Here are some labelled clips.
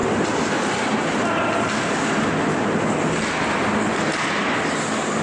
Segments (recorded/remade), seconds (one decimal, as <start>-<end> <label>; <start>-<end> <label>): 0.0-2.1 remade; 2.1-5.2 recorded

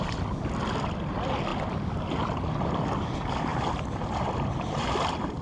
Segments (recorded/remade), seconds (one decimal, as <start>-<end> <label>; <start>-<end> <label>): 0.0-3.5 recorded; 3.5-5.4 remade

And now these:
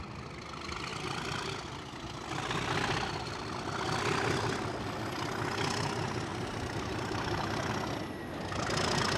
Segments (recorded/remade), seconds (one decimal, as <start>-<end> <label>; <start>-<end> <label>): 0.0-6.3 recorded; 6.3-7.7 remade; 7.7-9.2 recorded

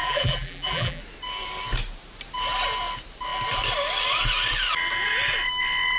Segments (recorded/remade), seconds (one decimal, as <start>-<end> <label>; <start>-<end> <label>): 0.0-1.0 remade; 1.0-6.0 recorded

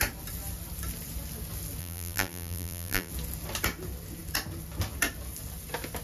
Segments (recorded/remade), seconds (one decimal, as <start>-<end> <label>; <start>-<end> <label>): 0.0-1.8 recorded; 1.8-3.1 remade; 3.1-6.0 recorded

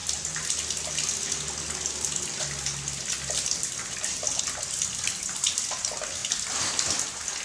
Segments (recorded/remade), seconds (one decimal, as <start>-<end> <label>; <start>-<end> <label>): 0.0-6.2 recorded; 6.2-7.4 remade